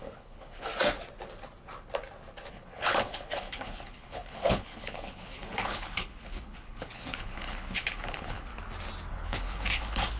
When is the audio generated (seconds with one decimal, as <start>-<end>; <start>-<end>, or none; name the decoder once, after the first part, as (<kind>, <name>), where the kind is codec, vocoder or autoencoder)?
0.0-0.7 (codec, HILCodec); 2.5-8.5; 9.1-10.2